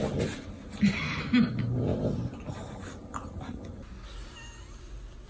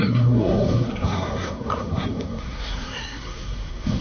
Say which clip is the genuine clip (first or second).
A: first